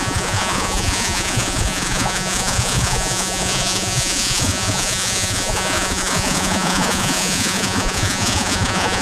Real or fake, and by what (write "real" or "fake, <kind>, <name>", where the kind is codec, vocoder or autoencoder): fake, vocoder, Vocos